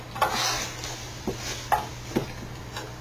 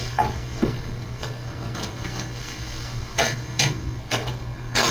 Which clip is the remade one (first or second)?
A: second